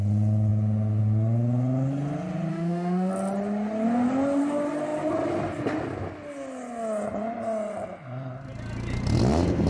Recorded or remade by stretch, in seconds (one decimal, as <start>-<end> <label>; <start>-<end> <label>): 0.0-2.5 recorded; 2.5-3.1 remade; 3.1-9.7 recorded